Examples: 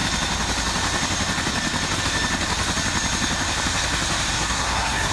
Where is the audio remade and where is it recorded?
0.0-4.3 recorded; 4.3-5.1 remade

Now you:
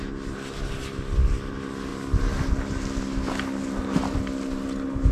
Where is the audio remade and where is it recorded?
0.0-5.1 recorded

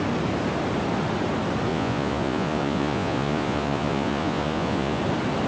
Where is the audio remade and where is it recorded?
0.0-1.7 recorded; 1.7-5.0 remade; 5.0-5.5 recorded

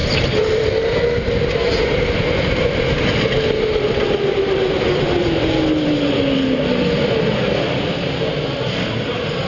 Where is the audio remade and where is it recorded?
0.0-9.5 recorded

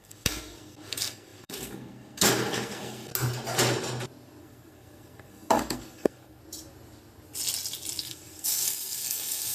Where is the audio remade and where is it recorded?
0.0-3.1 remade; 3.1-4.4 recorded; 4.4-6.4 remade; 6.4-8.0 recorded; 8.0-9.5 remade